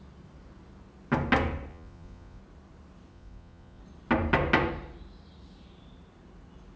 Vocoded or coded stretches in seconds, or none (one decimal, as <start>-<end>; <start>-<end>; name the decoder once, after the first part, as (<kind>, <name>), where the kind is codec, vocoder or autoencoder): 1.7-2.4 (vocoder, Vocos); 3.1-3.8